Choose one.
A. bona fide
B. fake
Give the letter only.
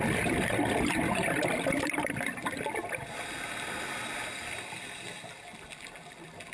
A